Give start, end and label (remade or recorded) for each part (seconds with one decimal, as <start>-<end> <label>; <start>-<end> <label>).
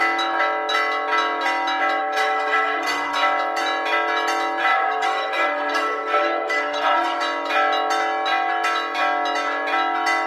0.0-2.0 recorded; 2.0-3.1 remade; 3.1-4.7 recorded; 4.7-7.2 remade; 7.2-10.3 recorded